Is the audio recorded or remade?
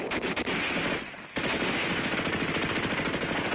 recorded